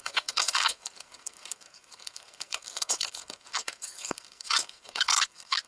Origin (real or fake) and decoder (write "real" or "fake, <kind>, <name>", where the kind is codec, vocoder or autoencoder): fake, codec, SNAC